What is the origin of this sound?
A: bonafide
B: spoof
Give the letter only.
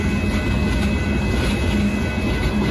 A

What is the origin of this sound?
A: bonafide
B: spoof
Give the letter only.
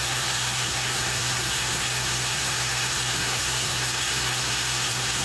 B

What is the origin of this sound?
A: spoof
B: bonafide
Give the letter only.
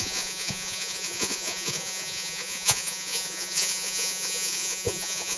A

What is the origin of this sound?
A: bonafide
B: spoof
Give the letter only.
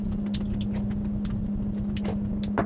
A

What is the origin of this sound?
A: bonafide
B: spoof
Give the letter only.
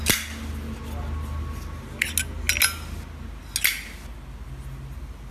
A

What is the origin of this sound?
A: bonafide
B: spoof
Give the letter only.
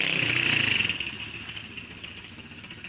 A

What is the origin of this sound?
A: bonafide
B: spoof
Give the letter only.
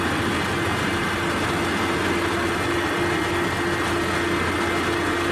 A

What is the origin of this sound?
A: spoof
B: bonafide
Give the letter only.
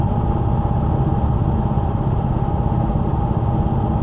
B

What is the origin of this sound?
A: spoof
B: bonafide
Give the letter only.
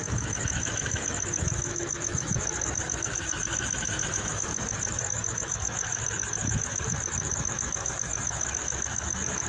A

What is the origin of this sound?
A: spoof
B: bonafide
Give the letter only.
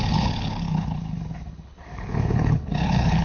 A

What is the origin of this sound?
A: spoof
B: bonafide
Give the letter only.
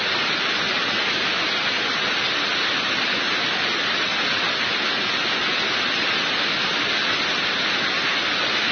B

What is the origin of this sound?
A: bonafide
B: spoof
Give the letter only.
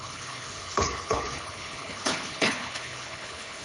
B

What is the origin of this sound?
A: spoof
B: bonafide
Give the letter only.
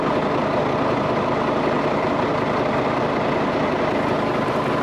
B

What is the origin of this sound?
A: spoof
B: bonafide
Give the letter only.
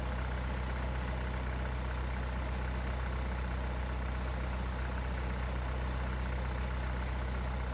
B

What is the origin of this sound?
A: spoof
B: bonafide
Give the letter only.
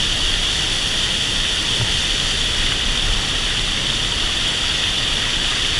B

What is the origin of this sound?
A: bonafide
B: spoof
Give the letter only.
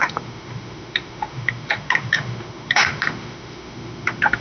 B